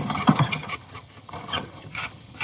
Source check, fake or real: fake